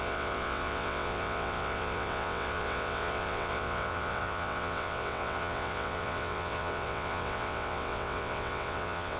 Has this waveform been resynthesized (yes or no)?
yes